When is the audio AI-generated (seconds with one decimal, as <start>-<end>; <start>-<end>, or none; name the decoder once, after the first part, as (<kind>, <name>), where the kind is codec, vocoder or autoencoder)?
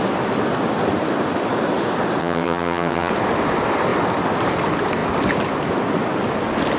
2.2-3.1 (vocoder, HiFi-GAN)